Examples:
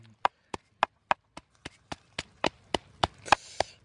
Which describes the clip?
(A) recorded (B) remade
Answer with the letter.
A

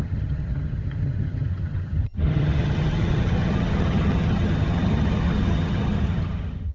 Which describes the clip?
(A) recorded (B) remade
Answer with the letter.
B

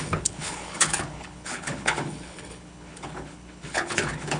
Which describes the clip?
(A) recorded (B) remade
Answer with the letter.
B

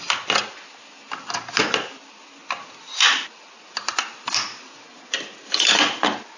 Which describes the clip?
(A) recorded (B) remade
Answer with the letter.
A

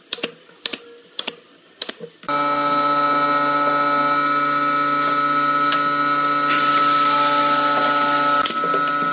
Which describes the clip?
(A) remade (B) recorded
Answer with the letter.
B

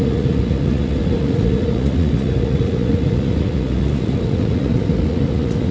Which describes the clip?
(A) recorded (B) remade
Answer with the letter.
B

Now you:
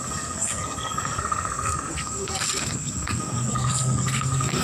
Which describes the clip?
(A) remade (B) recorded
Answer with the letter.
A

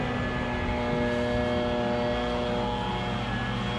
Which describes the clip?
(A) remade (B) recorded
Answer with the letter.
B